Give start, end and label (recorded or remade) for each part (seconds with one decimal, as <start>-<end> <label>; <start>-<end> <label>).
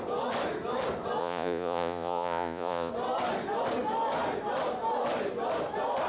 0.0-1.2 recorded; 1.2-2.9 remade; 2.9-6.1 recorded